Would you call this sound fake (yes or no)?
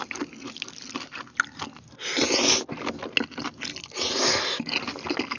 no